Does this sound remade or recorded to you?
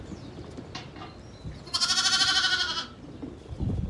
recorded